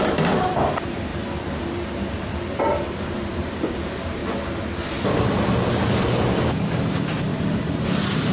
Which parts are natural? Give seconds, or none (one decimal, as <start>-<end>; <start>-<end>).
1.1-2.2; 4.2-5.2